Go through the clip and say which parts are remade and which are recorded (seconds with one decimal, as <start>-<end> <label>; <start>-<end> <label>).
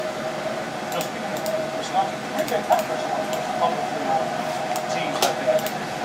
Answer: 0.0-6.0 recorded